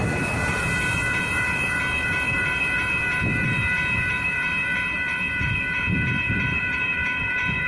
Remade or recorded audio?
remade